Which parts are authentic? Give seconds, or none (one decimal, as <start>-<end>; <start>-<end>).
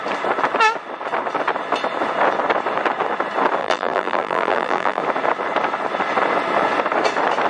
0.0-3.6; 5.0-7.5